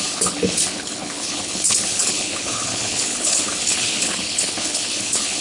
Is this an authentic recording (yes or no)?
no